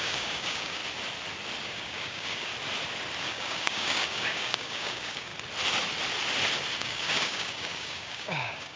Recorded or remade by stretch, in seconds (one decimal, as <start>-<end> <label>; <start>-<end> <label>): 0.0-0.8 remade; 0.8-1.6 recorded; 1.6-2.5 remade; 2.5-3.2 recorded; 3.2-5.3 remade; 5.3-6.8 recorded; 6.8-8.8 remade